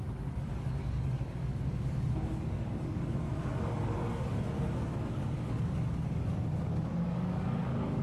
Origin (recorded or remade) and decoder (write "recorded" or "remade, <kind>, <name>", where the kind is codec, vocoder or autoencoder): remade, codec, DAC